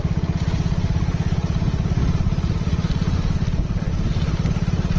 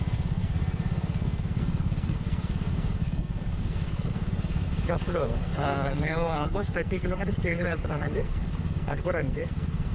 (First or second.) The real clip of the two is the first